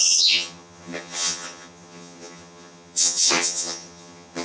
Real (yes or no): no